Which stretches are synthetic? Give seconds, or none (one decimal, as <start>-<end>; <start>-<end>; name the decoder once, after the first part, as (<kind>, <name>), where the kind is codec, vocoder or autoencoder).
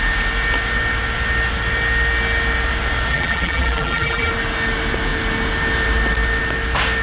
3.1-4.3 (vocoder, BigVGAN v2)